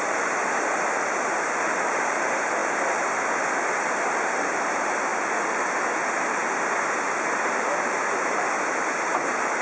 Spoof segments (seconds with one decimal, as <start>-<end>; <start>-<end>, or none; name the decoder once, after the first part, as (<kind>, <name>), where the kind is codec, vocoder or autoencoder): none